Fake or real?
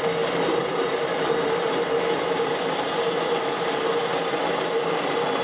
real